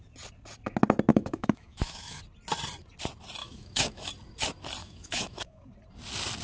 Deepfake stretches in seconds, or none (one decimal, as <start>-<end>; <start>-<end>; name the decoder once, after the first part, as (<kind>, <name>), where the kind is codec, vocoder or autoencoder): 1.1-2.2 (autoencoder, DAC-VAE); 3.4-4.1; 4.8-5.6